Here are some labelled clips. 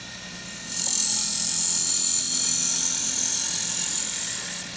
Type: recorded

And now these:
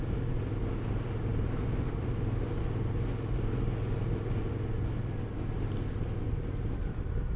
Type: recorded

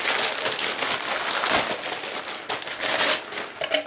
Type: recorded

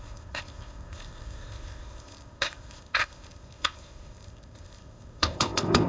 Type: remade